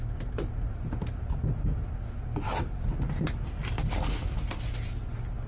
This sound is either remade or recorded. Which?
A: recorded